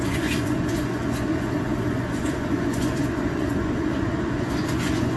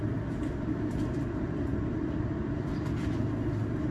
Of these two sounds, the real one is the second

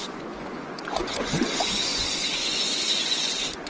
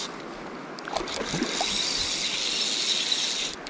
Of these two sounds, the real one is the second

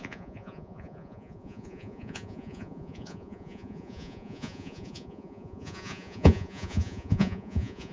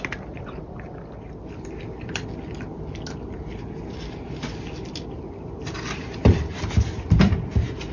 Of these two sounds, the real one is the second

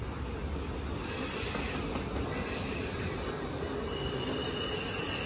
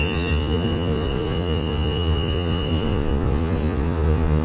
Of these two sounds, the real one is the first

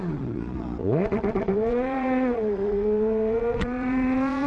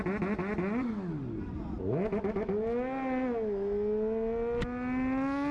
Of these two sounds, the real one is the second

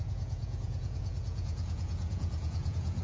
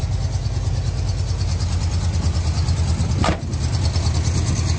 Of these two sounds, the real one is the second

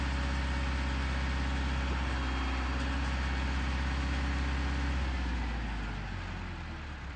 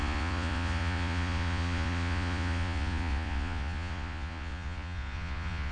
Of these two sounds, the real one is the first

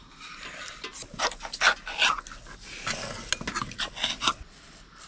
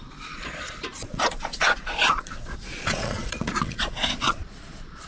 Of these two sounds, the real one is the first